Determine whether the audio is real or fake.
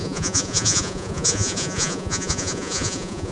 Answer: fake